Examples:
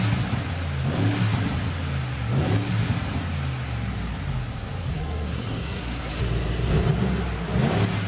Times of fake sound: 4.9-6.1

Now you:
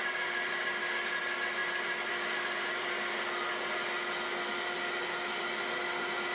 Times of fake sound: none

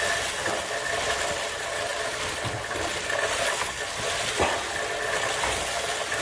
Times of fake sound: none

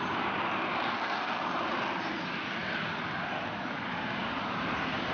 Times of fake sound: 1.0-1.5

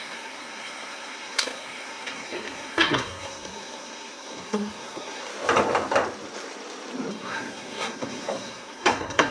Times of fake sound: 0.0-5.3; 7.1-9.3

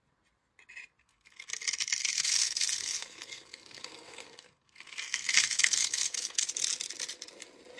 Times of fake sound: 1.0-1.5; 2.0-6.5